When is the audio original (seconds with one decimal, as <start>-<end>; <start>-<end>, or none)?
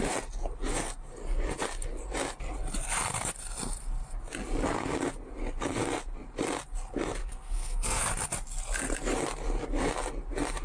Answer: 0.0-7.2; 8.1-10.6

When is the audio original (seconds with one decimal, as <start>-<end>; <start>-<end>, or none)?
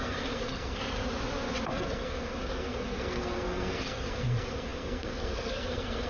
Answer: 0.8-1.7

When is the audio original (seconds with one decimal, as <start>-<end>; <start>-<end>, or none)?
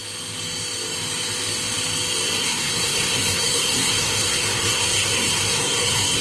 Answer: 0.0-2.4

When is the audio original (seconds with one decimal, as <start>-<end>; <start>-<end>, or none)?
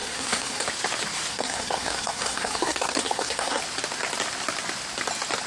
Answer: 0.7-1.3; 3.6-5.5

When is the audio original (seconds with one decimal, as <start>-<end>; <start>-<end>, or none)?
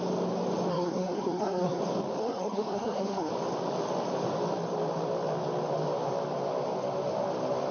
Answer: 0.0-0.7; 1.8-2.2; 3.3-7.7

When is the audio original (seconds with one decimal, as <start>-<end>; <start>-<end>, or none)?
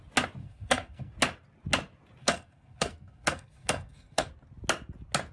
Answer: 0.0-0.4; 1.1-2.2; 4.3-5.3